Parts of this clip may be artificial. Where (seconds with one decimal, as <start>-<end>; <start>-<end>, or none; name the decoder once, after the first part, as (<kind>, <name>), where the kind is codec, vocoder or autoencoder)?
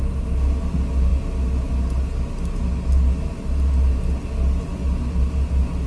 none